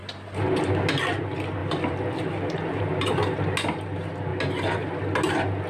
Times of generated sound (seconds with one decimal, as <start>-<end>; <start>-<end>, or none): 1.6-2.8